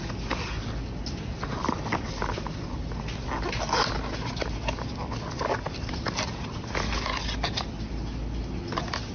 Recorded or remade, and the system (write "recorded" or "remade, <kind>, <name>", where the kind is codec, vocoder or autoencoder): recorded